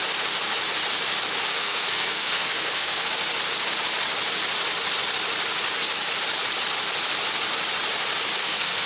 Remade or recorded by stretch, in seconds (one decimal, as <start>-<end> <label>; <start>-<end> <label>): 0.0-1.5 recorded; 1.5-3.1 remade; 3.1-8.4 recorded; 8.4-8.9 remade